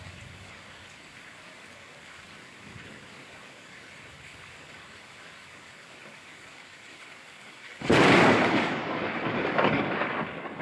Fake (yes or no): yes